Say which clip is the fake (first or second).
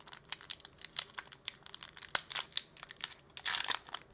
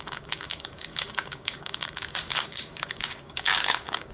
second